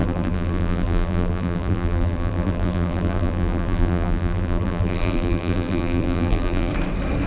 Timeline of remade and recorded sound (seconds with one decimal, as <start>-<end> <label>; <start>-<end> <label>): 0.0-6.7 remade; 6.7-7.3 recorded